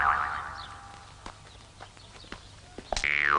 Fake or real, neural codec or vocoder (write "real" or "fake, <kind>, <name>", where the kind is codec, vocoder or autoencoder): real